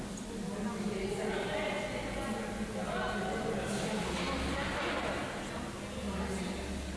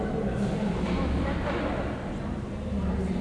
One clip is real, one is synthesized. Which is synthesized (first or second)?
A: second